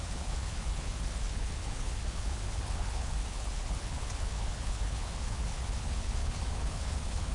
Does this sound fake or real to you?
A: fake